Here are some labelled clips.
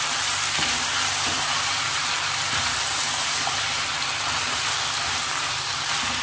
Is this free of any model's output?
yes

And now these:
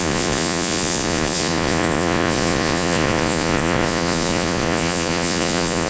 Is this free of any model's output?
no